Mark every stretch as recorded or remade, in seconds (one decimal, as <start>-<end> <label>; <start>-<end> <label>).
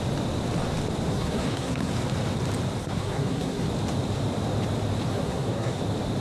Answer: 0.0-1.1 recorded; 1.1-1.9 remade; 1.9-2.8 recorded; 2.8-3.7 remade; 3.7-5.1 recorded; 5.1-5.8 remade; 5.8-6.2 recorded